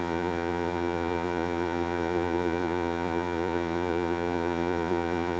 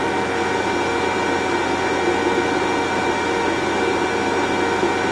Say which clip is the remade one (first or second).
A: first